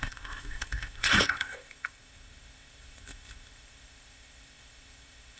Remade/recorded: remade